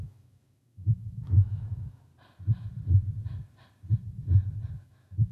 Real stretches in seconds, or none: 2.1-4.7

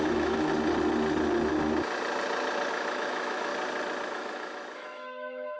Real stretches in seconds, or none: 0.5-2.7; 3.5-4.1

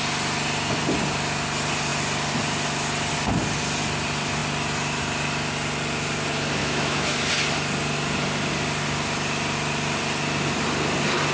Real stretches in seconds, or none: 0.0-6.6; 7.3-11.3